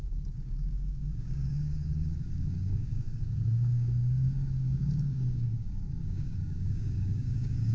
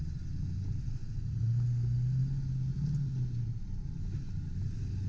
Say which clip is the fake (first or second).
first